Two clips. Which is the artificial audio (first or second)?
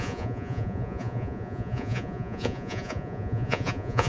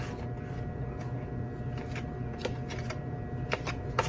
first